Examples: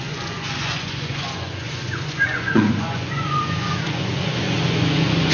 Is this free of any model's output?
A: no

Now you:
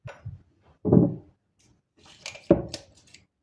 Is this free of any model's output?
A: yes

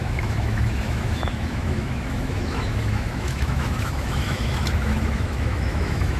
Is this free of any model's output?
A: no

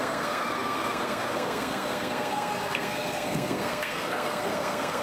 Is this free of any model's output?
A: no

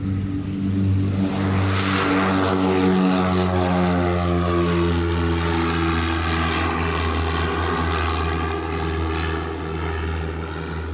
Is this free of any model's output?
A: yes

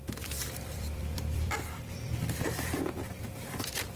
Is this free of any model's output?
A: no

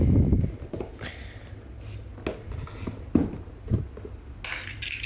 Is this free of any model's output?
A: yes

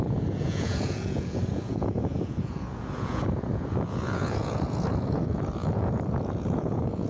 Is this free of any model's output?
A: no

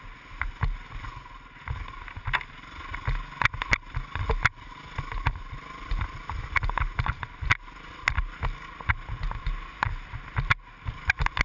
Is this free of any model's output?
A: yes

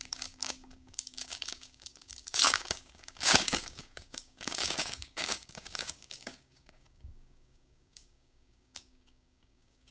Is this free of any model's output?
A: no